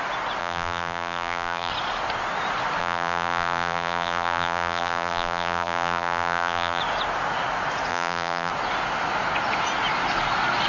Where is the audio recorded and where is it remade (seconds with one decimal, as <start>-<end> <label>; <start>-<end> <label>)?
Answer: 0.0-0.4 recorded; 0.4-1.7 remade; 1.7-2.8 recorded; 2.8-6.8 remade; 6.8-7.9 recorded; 7.9-8.5 remade; 8.5-10.7 recorded